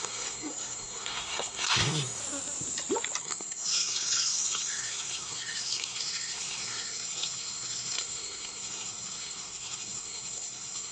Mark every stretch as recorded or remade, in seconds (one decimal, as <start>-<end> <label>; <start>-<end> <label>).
0.0-2.2 remade; 2.2-3.2 recorded; 3.2-10.9 remade